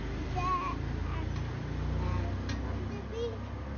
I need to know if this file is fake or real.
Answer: real